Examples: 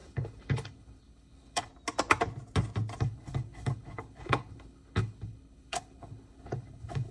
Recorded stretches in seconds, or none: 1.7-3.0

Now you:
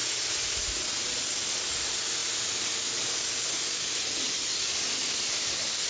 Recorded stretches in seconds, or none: 0.0-5.9